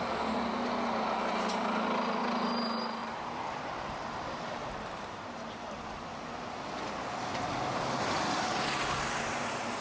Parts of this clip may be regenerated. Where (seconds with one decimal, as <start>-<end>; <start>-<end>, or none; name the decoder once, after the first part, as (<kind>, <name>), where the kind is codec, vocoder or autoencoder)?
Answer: 3.0-5.9 (vocoder, BigVGAN v2)